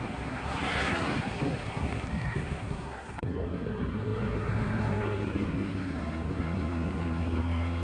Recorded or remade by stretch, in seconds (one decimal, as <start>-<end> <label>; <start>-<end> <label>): 0.0-7.8 remade